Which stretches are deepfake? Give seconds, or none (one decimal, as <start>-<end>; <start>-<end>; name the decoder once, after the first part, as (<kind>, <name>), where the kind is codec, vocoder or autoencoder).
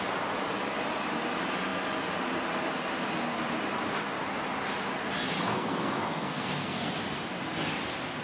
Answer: 5.5-6.9 (codec, SNAC)